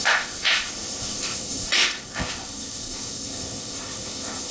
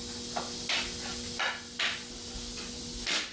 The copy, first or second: first